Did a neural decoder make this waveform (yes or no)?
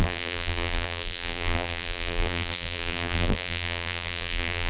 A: yes